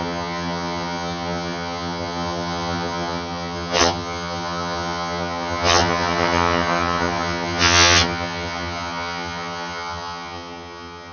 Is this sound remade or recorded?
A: remade